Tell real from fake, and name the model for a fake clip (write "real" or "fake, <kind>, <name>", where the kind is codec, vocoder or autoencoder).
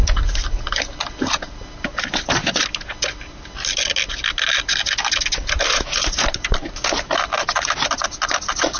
real